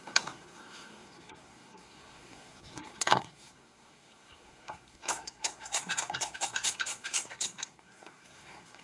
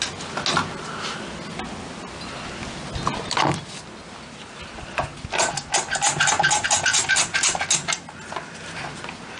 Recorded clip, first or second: second